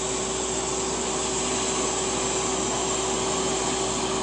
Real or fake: real